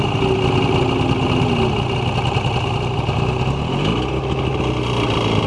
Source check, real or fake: real